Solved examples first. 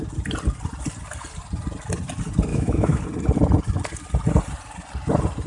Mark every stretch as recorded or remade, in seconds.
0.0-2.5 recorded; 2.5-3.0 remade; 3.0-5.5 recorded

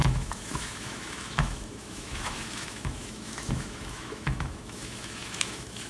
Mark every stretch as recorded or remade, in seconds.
0.0-5.9 remade

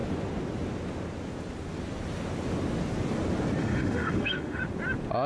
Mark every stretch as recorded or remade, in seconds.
0.0-3.6 recorded; 3.6-4.6 remade; 4.6-5.3 recorded

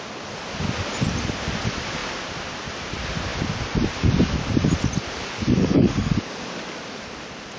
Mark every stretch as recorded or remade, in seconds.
0.0-5.6 recorded; 5.6-6.1 remade; 6.1-7.6 recorded

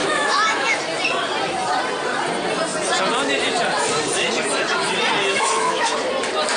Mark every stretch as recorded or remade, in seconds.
0.0-0.8 remade; 0.8-5.3 recorded; 5.3-5.9 remade; 5.9-6.6 recorded

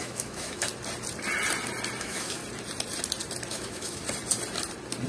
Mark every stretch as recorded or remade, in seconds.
0.0-0.7 remade; 0.7-2.0 recorded; 2.0-2.4 remade; 2.4-3.5 recorded; 3.5-4.0 remade; 4.0-5.1 recorded

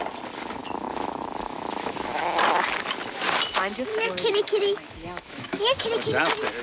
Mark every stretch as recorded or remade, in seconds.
0.0-0.6 recorded; 0.6-2.2 remade; 2.2-3.9 recorded; 3.9-5.6 remade; 5.6-6.6 recorded

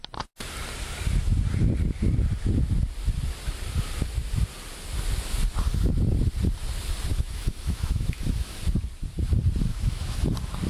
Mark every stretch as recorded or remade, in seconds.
0.0-7.1 recorded; 7.1-8.6 remade; 8.6-9.7 recorded; 9.7-10.2 remade; 10.2-10.7 recorded